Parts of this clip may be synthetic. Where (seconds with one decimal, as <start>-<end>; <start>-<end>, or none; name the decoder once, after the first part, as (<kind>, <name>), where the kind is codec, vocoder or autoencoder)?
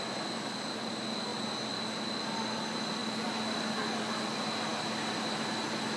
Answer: none